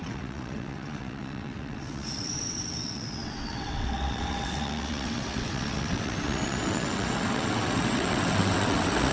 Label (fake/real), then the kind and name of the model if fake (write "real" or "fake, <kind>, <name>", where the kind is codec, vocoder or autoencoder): fake, vocoder, WaveNeXt